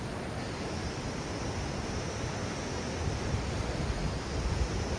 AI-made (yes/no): no